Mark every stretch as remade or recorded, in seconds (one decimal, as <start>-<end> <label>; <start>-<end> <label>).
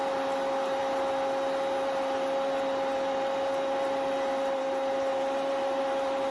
0.0-5.1 recorded; 5.1-5.8 remade; 5.8-6.3 recorded